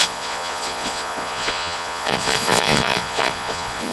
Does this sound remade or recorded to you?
remade